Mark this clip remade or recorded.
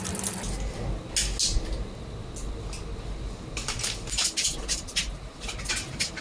recorded